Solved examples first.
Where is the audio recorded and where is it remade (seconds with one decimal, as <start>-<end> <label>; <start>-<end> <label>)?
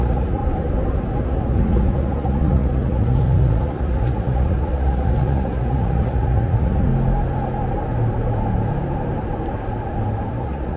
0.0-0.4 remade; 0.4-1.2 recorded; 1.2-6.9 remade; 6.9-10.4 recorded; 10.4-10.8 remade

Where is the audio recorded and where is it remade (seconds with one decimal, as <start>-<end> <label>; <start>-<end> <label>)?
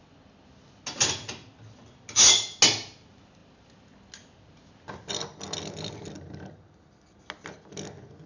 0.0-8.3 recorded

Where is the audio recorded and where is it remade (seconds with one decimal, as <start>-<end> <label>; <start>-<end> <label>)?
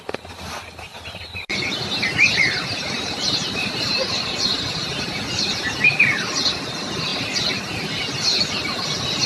0.0-0.9 recorded; 0.9-5.1 remade; 5.1-9.3 recorded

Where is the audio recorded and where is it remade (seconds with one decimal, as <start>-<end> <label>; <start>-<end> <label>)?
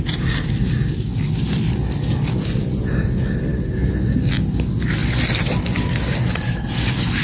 0.0-7.2 recorded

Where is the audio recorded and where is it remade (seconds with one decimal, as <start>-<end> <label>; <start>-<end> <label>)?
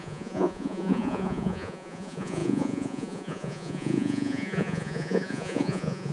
0.0-6.1 remade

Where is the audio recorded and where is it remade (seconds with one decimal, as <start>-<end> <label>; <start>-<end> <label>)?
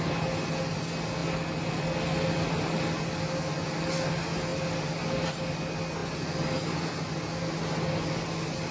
0.0-8.7 recorded